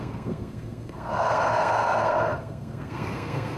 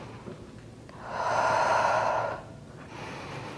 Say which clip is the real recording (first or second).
second